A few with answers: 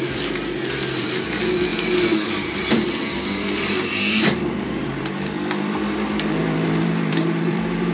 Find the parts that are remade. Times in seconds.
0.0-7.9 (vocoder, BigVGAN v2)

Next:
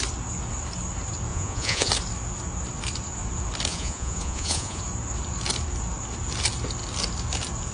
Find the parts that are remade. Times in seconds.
1.3-1.9 (vocoder, Vocos); 3.7-4.8

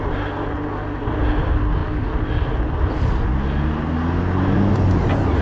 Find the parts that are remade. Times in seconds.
none

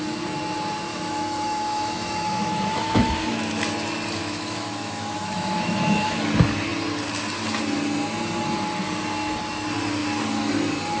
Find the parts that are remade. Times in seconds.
0.9-3.6 (autoencoder, DAC-VAE); 4.2-6.2